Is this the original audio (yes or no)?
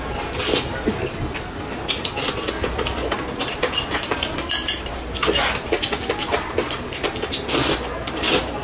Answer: yes